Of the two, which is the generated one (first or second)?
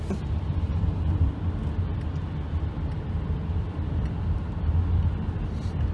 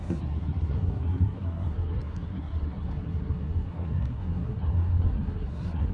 second